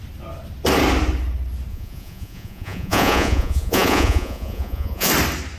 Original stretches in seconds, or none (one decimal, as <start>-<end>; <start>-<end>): 0.0-1.7; 5.1-5.6